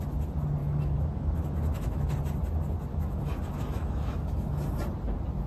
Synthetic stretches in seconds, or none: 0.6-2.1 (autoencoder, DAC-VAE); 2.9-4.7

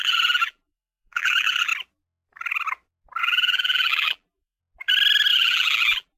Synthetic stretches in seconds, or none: 0.0-1.7 (vocoder, BigVGAN v2); 3.2-4.6; 5.3-6.2

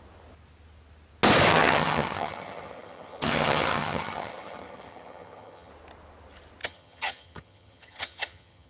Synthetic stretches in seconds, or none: 1.5-5.7 (vocoder, HiFi-GAN); 6.6-8.7

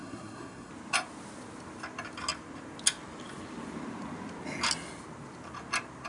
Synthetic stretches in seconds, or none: 0.0-0.7 (codec, SNAC)